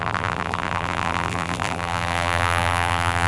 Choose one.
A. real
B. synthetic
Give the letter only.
B